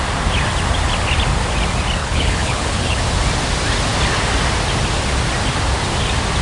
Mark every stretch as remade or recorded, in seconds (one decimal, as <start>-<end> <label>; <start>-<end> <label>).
0.0-2.0 recorded; 2.0-3.0 remade; 3.0-6.4 recorded